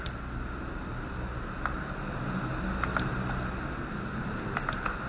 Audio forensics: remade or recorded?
recorded